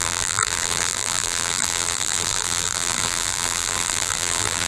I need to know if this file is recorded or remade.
remade